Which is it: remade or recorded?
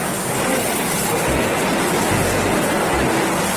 recorded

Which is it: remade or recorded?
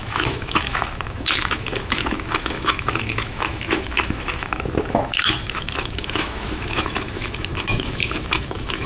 remade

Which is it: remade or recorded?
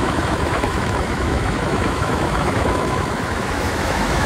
remade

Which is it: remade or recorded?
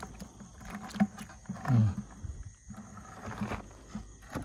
recorded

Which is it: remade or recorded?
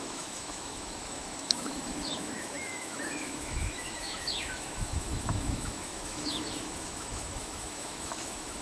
remade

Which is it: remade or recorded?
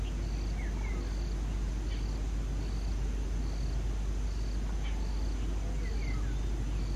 recorded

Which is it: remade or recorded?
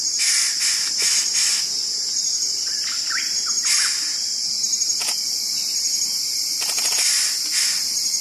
recorded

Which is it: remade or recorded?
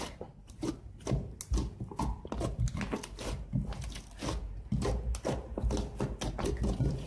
recorded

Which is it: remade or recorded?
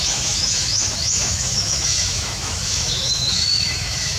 remade